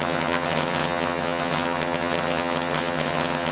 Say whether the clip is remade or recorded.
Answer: remade